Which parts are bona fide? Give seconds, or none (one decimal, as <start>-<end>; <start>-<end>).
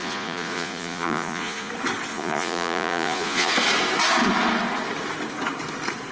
1.7-2.1; 3.5-6.1